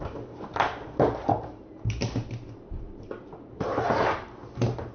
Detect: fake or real fake